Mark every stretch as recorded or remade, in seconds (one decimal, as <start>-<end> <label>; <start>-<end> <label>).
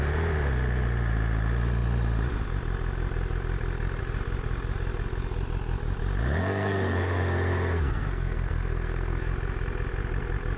0.0-6.4 recorded; 6.4-9.3 remade; 9.3-10.6 recorded